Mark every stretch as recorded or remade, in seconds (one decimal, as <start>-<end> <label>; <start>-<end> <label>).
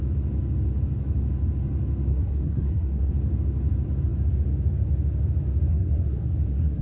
0.0-2.1 recorded; 2.1-3.1 remade; 3.1-5.7 recorded; 5.7-6.8 remade